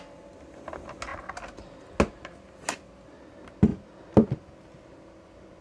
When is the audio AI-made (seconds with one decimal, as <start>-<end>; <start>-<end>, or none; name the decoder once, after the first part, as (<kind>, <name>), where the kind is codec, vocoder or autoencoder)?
none